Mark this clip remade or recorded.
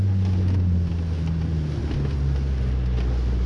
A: recorded